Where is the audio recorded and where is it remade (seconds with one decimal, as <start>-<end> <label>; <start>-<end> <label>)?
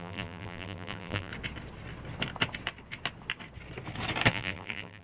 0.0-1.3 remade; 1.3-4.3 recorded; 4.3-5.0 remade